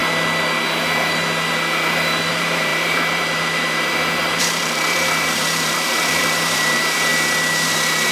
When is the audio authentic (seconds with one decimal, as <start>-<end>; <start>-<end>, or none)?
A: 0.0-2.3; 7.1-8.1